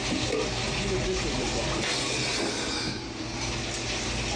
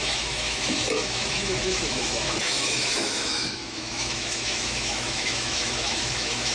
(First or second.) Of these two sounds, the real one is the first